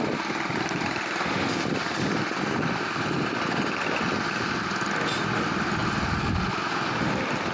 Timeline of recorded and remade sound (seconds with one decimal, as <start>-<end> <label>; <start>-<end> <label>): 0.0-7.5 recorded